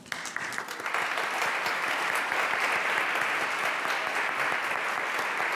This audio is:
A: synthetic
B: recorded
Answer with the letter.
B